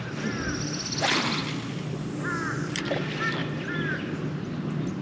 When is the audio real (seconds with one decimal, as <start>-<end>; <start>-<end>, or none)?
0.0-5.0